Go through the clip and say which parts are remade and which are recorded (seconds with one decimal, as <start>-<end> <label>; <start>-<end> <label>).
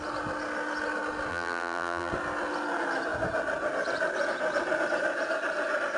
0.0-1.3 recorded; 1.3-2.1 remade; 2.1-6.0 recorded